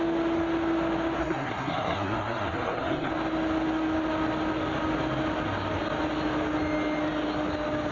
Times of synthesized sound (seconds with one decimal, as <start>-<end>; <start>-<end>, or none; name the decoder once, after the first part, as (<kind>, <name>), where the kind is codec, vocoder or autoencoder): 1.2-3.1 (codec, SNAC)